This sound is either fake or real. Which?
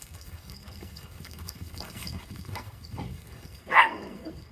fake